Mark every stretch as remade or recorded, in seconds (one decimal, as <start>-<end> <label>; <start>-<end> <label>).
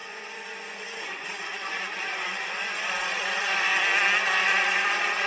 0.0-3.7 remade; 3.7-4.4 recorded; 4.4-5.3 remade